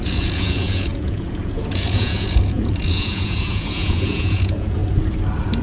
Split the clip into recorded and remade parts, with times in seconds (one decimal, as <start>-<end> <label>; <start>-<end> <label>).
0.0-4.8 remade; 4.8-5.6 recorded